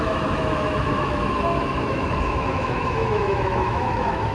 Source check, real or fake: fake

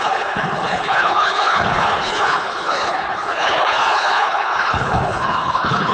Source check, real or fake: fake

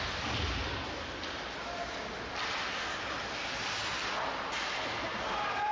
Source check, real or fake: real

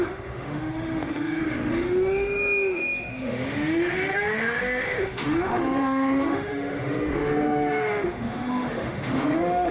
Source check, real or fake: fake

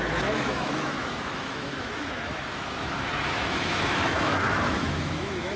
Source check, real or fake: fake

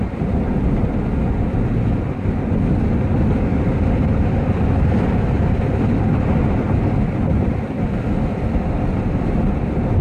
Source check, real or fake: real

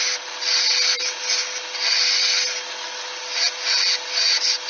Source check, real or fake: real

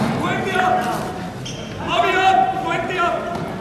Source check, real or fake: real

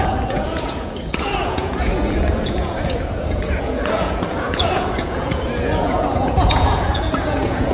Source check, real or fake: fake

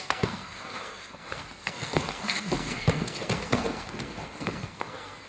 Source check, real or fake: fake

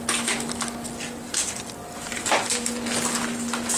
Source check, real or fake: real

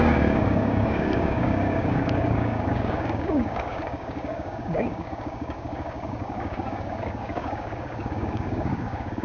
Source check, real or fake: fake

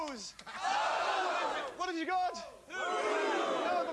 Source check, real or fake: real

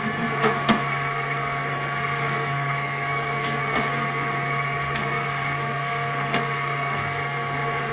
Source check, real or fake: fake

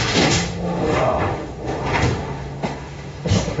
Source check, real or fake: fake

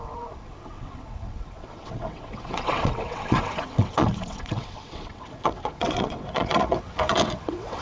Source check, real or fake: fake